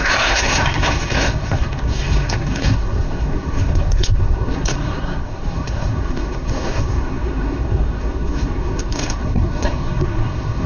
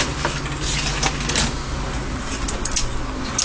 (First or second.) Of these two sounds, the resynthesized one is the first